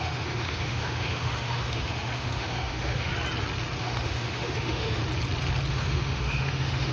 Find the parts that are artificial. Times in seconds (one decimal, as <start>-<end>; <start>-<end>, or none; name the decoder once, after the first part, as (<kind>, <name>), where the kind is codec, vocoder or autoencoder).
0.0-3.1 (autoencoder, DAC-VAE); 3.8-5.0; 5.7-6.9